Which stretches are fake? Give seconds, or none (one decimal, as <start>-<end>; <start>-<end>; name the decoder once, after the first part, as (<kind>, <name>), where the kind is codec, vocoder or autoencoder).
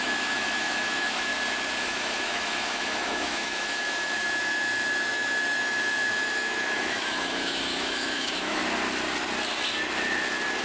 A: 0.0-1.3 (autoencoder, DAC-VAE); 1.8-8.6